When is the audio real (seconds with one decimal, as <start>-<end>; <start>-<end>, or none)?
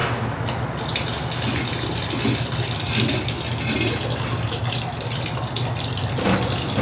0.0-6.8